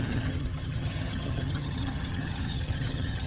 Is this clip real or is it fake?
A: fake